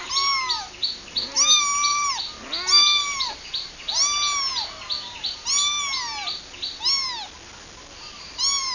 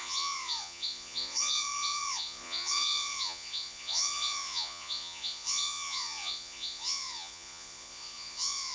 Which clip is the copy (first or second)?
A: second